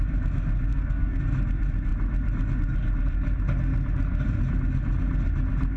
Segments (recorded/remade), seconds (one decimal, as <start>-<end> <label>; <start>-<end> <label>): 0.0-0.7 recorded; 0.7-1.2 remade; 1.2-5.8 recorded